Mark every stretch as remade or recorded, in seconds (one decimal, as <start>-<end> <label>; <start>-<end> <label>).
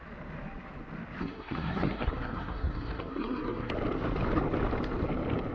0.0-1.2 recorded; 1.2-3.7 remade; 3.7-5.5 recorded